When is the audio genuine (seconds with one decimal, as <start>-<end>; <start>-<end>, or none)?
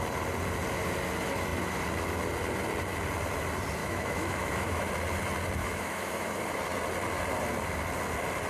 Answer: 0.0-3.8; 4.9-5.6; 6.4-8.5